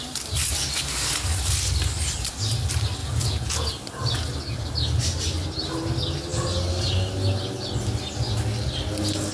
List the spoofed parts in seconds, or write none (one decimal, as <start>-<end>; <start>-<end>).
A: 3.0-3.7